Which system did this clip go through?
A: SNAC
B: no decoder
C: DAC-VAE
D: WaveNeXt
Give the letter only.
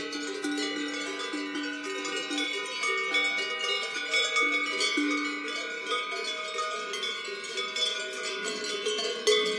B